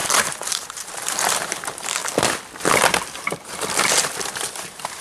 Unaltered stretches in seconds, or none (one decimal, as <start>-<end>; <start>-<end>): 2.0-4.6